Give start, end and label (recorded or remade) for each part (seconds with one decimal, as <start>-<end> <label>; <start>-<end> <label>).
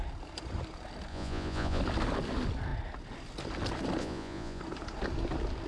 0.0-1.1 recorded; 1.1-1.8 remade; 1.8-4.0 recorded; 4.0-4.6 remade; 4.6-5.7 recorded